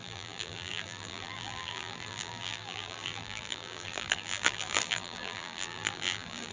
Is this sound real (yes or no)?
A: no